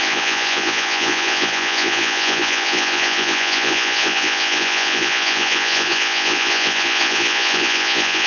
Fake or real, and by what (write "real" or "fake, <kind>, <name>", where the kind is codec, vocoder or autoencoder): fake, vocoder, Vocos